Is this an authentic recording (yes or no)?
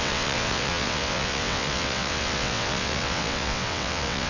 no